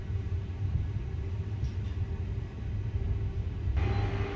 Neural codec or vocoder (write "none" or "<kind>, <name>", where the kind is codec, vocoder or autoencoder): none